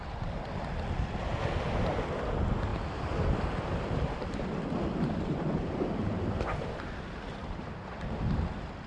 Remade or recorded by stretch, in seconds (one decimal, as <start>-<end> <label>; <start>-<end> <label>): 0.0-1.3 recorded; 1.3-1.9 remade; 1.9-2.7 recorded; 2.7-4.5 remade; 4.5-7.4 recorded; 7.4-8.1 remade; 8.1-8.9 recorded